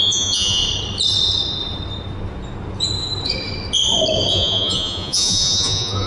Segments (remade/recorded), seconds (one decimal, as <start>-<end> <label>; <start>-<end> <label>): 0.0-0.6 remade; 0.6-4.3 recorded; 4.3-6.1 remade